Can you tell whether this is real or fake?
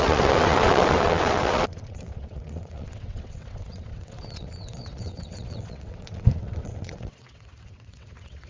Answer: fake